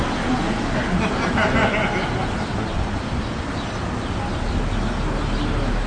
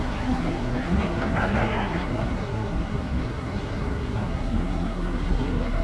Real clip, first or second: first